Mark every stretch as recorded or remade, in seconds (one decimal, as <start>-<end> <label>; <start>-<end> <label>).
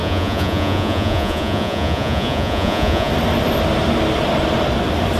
0.0-3.1 remade; 3.1-5.2 recorded